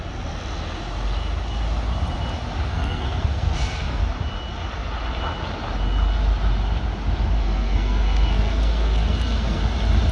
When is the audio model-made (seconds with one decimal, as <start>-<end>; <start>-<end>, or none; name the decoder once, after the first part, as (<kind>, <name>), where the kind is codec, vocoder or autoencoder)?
2.7-4.0 (codec, SNAC); 7.4-9.6